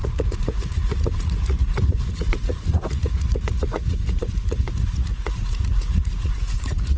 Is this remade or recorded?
remade